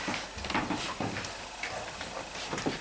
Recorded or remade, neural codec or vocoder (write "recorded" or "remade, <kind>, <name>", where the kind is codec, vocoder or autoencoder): remade, vocoder, BigVGAN v2